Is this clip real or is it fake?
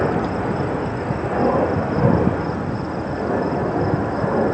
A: real